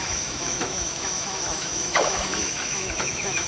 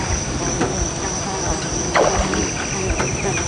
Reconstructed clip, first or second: first